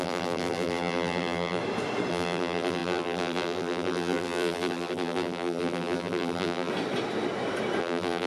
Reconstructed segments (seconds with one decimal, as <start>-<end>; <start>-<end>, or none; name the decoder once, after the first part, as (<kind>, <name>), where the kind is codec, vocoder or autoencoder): 0.0-1.6 (vocoder, BigVGAN v2); 2.1-6.7; 7.8-8.3